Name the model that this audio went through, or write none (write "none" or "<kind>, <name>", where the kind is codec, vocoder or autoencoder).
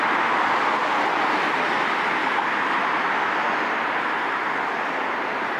none